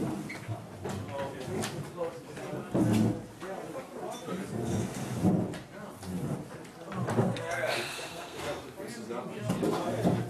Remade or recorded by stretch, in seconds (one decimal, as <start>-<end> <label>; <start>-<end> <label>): 0.0-7.2 recorded; 7.2-8.4 remade; 8.4-10.3 recorded